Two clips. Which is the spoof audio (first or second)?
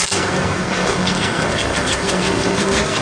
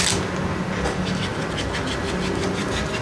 first